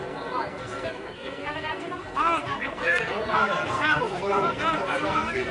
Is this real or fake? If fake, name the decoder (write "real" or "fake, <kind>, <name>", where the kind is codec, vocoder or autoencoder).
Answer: fake, codec, SNAC